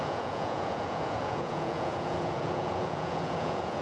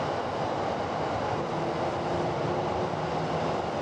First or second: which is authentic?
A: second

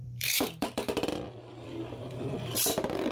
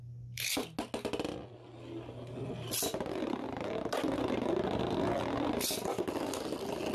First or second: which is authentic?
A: second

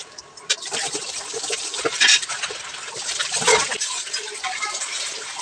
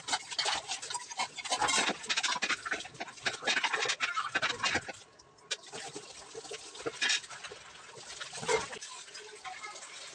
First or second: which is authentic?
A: second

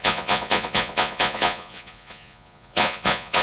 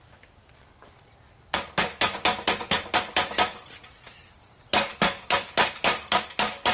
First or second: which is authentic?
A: second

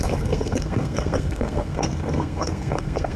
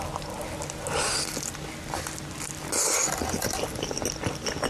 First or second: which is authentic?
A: second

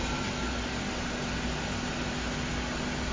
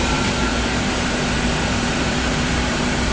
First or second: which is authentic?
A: first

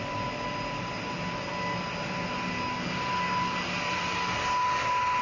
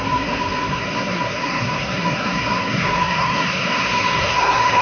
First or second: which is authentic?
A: first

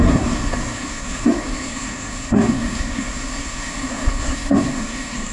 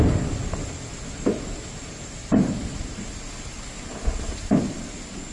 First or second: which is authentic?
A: second